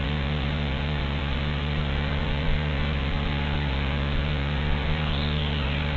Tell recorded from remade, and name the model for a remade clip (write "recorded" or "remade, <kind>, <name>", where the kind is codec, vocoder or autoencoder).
remade, vocoder, Vocos